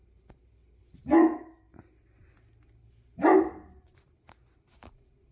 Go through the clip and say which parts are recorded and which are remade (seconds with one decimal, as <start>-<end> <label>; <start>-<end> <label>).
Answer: 0.0-0.6 remade; 0.6-3.8 recorded; 3.8-5.3 remade